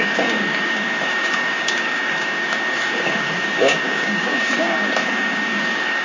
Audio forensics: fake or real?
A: fake